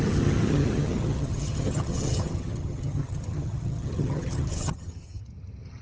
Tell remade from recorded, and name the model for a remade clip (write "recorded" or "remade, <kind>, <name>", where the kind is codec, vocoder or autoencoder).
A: remade, vocoder, HiFi-GAN